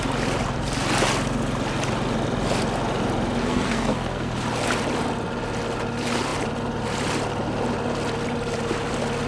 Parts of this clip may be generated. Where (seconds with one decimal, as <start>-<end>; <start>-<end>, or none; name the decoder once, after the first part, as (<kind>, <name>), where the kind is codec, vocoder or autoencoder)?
3.4-4.3 (codec, SNAC)